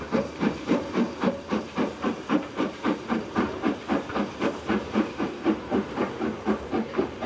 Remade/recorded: remade